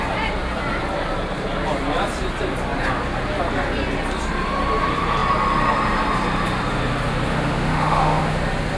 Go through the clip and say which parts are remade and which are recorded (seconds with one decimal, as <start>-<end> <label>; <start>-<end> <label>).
0.0-7.3 recorded; 7.3-8.4 remade; 8.4-8.8 recorded